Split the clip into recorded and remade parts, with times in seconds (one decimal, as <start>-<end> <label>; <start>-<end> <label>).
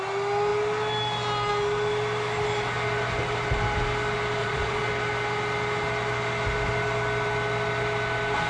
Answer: 0.0-4.4 recorded; 4.4-4.9 remade; 4.9-8.5 recorded